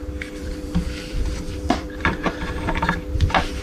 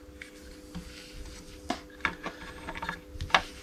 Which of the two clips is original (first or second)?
second